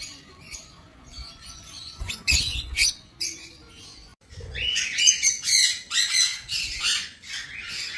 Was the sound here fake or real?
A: fake